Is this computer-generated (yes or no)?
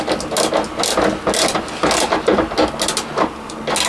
no